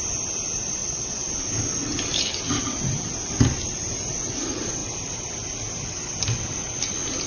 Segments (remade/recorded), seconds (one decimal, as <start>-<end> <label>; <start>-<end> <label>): 0.0-0.8 recorded; 0.8-1.3 remade; 1.3-7.3 recorded

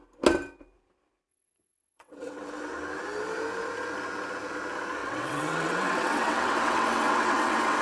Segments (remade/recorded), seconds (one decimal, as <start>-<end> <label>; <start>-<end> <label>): 0.0-1.3 recorded; 1.3-2.5 remade; 2.5-5.0 recorded; 5.0-7.8 remade

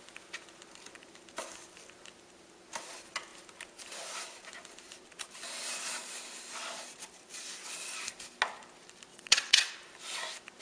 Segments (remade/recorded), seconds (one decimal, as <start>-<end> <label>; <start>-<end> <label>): 0.0-9.1 recorded; 9.1-9.7 remade; 9.7-10.6 recorded

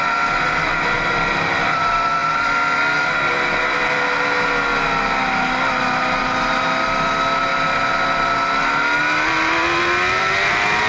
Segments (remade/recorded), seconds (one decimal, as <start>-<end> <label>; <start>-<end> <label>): 0.0-10.9 recorded